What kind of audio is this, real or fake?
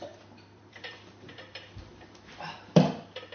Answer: fake